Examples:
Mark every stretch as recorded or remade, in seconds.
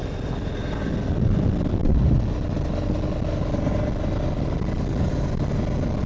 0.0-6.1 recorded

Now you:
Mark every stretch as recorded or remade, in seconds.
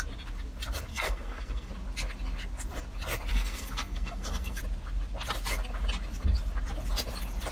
0.0-0.9 recorded; 0.9-1.7 remade; 1.7-3.3 recorded; 3.3-4.6 remade; 4.6-7.5 recorded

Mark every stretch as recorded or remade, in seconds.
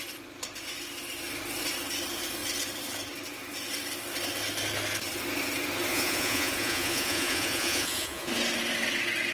0.0-5.9 recorded; 5.9-8.3 remade; 8.3-9.3 recorded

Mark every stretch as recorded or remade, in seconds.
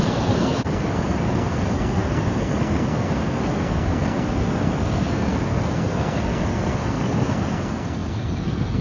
0.0-8.8 remade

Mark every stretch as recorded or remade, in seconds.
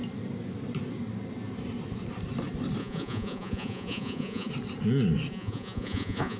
0.0-2.8 recorded; 2.8-4.5 remade; 4.5-5.3 recorded; 5.3-6.4 remade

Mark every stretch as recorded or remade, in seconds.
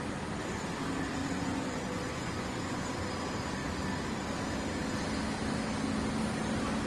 0.0-1.2 recorded; 1.2-2.8 remade; 2.8-6.9 recorded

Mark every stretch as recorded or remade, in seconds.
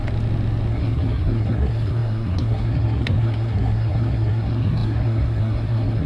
0.0-0.7 recorded; 0.7-6.1 remade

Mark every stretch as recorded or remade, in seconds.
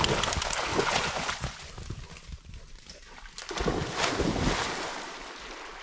0.0-0.7 recorded; 0.7-1.7 remade; 1.7-5.8 recorded